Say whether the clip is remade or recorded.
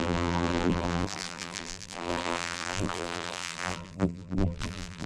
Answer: remade